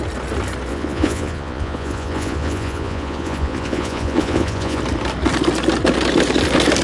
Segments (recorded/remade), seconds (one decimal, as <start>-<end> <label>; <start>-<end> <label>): 0.0-0.7 recorded; 0.7-4.8 remade; 4.8-6.8 recorded